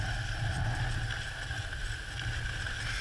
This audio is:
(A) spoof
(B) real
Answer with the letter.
B